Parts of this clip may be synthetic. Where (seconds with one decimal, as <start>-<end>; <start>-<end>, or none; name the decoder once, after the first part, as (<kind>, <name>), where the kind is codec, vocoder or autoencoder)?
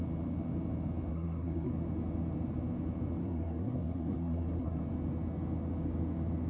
1.1-1.7 (codec, SNAC); 3.2-4.8